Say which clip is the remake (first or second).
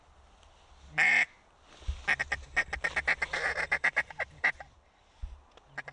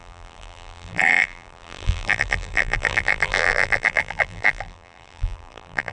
second